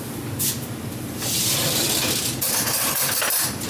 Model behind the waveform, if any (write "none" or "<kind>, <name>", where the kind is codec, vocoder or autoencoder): none